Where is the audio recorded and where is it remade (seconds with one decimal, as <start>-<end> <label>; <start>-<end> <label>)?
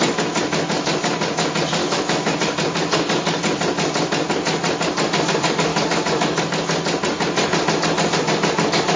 0.0-1.8 recorded; 1.8-2.4 remade; 2.4-5.7 recorded; 5.7-6.4 remade; 6.4-9.0 recorded